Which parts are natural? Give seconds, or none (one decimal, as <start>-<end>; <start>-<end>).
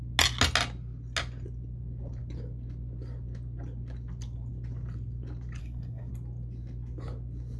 0.0-5.6; 6.1-7.6